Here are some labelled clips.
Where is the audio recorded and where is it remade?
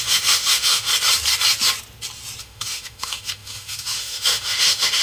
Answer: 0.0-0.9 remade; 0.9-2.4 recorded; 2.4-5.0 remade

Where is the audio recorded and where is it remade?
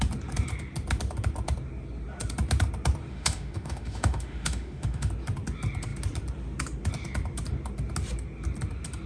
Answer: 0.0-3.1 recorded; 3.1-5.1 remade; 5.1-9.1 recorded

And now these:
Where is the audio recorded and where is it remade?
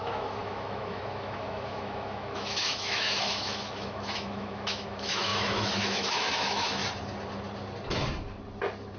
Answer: 0.0-6.8 remade; 6.8-9.0 recorded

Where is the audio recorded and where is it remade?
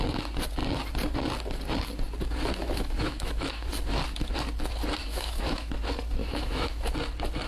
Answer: 0.0-2.6 recorded; 2.6-3.7 remade; 3.7-5.0 recorded; 5.0-5.7 remade; 5.7-6.2 recorded; 6.2-6.9 remade; 6.9-7.5 recorded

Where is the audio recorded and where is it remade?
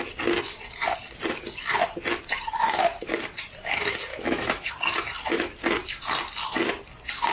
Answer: 0.0-4.1 recorded; 4.1-4.7 remade; 4.7-7.3 recorded